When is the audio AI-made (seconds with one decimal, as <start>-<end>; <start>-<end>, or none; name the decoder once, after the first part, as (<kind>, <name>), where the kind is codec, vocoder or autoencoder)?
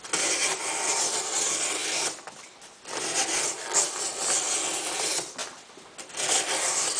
none